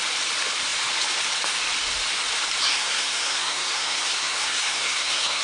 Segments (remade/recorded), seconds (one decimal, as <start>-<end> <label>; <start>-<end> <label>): 0.0-2.7 recorded; 2.7-5.4 remade